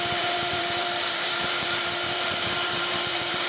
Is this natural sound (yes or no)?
no